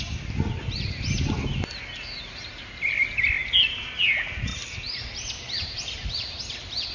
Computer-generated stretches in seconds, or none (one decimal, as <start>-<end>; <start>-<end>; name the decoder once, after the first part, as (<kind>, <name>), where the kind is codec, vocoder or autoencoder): none

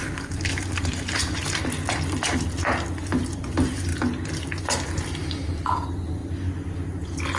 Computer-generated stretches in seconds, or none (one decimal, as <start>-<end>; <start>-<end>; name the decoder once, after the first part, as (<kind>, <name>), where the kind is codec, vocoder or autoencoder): none